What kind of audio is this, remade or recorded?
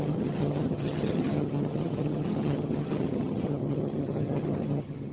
remade